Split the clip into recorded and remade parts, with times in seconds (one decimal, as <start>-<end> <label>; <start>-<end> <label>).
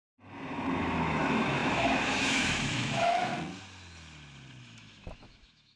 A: 0.0-0.8 recorded; 0.8-3.3 remade; 3.3-4.6 recorded; 4.6-5.8 remade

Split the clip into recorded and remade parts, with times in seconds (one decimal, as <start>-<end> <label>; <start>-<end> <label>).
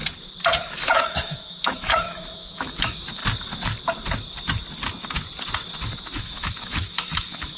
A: 0.0-0.7 recorded; 0.7-3.2 remade; 3.2-6.2 recorded; 6.2-7.6 remade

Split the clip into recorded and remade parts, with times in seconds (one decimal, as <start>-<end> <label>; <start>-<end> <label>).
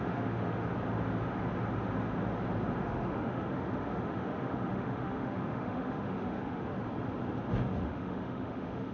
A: 0.0-0.7 remade; 0.7-2.8 recorded; 2.8-6.7 remade; 6.7-7.5 recorded; 7.5-8.9 remade